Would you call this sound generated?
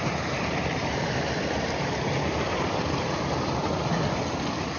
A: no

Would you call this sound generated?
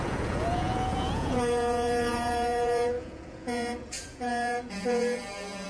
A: yes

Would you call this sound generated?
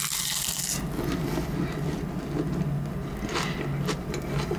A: no